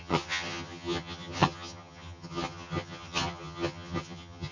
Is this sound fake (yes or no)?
yes